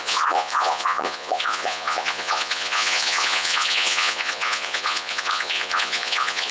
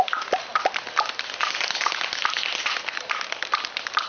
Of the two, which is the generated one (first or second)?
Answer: first